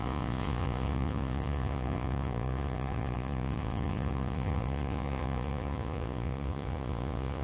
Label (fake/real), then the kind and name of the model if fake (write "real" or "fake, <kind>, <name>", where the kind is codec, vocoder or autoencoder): fake, vocoder, Vocos